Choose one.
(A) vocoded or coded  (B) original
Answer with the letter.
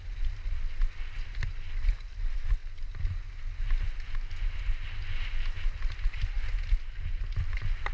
B